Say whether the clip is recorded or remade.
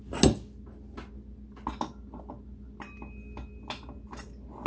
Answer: recorded